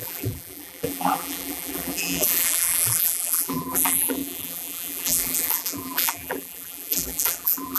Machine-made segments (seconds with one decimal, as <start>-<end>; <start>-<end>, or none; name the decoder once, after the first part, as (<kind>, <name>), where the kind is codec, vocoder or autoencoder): 0.0-7.8 (vocoder, BigVGAN v2)